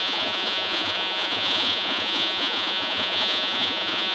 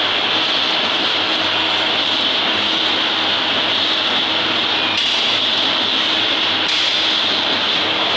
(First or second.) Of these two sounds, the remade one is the first